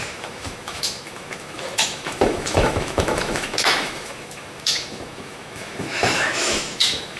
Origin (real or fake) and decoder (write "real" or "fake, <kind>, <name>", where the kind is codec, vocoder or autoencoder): fake, autoencoder, DAC-VAE